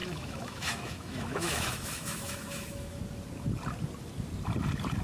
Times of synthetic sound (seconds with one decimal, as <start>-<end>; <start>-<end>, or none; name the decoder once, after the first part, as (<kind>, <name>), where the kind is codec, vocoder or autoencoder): 0.0-3.0 (autoencoder, DAC-VAE)